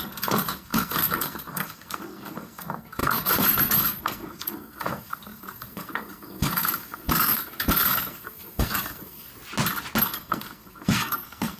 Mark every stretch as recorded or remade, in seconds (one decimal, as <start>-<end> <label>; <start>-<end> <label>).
0.0-9.3 remade; 9.3-10.0 recorded; 10.0-11.6 remade